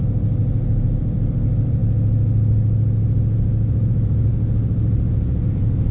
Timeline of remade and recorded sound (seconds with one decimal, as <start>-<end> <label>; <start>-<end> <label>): 0.0-0.4 remade; 0.4-0.9 recorded; 0.9-1.8 remade; 1.8-3.9 recorded; 3.9-4.3 remade; 4.3-5.5 recorded; 5.5-5.9 remade